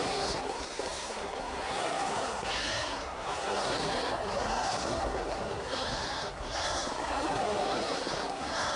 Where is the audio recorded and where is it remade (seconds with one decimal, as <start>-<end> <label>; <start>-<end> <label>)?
0.0-8.8 remade